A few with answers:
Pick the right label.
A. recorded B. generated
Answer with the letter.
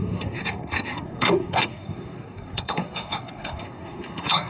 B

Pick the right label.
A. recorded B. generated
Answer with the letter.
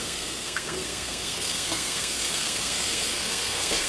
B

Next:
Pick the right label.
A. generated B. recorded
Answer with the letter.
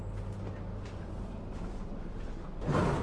B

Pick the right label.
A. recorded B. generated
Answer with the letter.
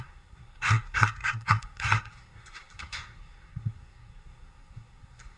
B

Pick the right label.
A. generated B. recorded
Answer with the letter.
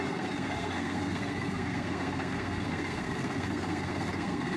A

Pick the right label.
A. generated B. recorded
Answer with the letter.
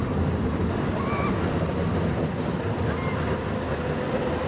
B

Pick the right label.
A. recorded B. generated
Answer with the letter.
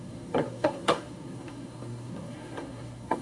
B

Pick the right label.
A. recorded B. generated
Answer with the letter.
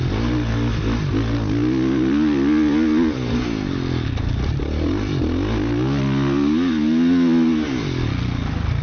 A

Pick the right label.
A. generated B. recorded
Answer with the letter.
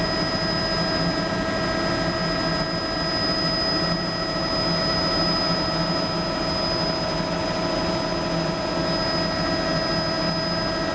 B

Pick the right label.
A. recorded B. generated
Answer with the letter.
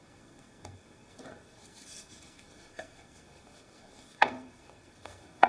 B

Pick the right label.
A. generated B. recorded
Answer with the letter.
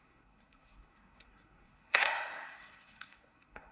A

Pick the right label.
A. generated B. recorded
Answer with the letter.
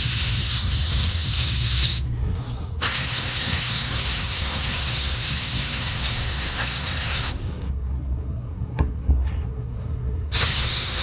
A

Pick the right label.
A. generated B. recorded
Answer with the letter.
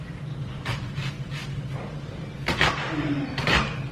B